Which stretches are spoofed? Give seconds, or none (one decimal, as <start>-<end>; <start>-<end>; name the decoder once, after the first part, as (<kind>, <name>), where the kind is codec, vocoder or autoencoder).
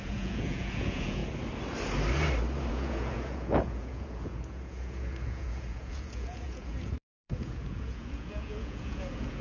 0.0-1.2 (vocoder, Vocos); 2.7-9.4